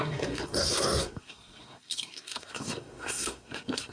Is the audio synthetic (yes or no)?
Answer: yes